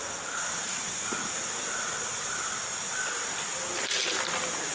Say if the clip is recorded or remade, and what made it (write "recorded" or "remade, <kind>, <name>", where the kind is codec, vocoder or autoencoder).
recorded